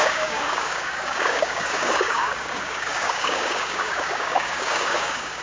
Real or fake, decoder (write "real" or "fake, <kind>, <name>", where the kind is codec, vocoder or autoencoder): fake, codec, DAC